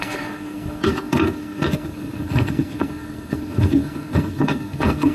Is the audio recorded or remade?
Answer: remade